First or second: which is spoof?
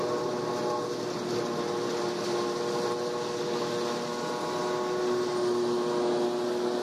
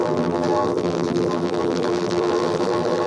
second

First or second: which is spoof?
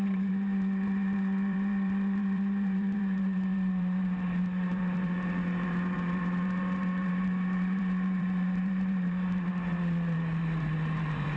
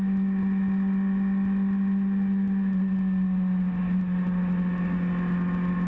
first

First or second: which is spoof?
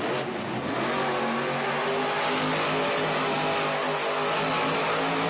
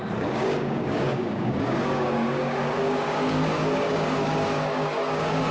second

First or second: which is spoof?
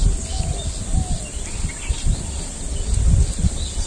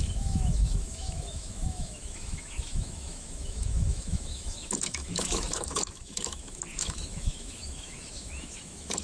second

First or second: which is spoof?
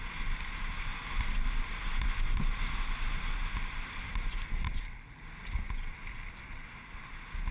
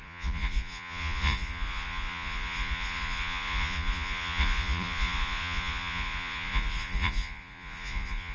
second